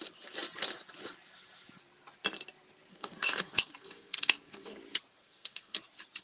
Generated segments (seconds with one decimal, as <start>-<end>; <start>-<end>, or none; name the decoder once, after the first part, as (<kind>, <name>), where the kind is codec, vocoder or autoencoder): 2.9-4.8 (codec, SNAC); 5.2-5.8